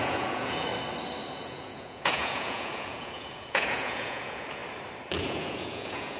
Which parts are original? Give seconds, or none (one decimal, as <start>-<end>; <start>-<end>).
0.7-1.3; 4.6-5.2